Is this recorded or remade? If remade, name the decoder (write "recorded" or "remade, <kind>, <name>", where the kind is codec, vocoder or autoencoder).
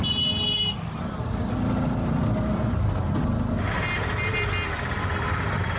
recorded